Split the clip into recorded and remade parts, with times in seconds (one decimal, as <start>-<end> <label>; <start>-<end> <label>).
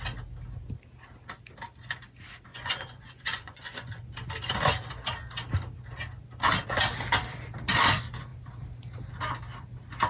0.0-2.5 recorded; 2.5-4.0 remade; 4.0-10.1 recorded